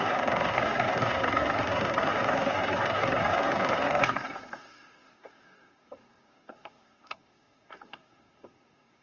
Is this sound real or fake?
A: fake